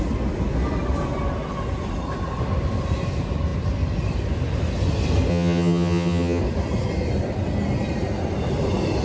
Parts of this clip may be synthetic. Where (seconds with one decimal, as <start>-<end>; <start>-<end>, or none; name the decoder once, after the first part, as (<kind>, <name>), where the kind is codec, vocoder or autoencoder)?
5.3-6.4 (vocoder, HiFi-GAN)